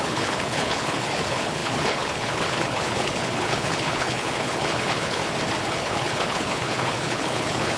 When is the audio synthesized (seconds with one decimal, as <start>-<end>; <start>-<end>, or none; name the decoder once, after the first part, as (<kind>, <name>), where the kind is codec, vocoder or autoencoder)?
0.0-5.2 (codec, HILCodec); 5.7-7.8